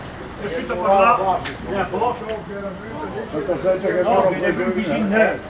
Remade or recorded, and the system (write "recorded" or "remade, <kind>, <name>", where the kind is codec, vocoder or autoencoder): recorded